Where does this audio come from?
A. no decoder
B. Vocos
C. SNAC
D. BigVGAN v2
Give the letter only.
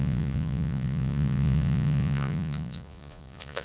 B